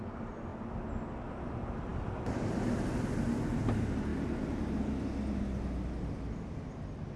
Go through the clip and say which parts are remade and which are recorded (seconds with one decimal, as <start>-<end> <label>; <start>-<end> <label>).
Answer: 0.0-1.9 recorded; 1.9-3.3 remade; 3.3-7.2 recorded